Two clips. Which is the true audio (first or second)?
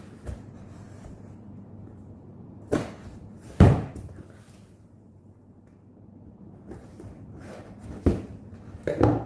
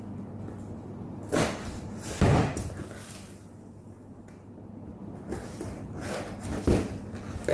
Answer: second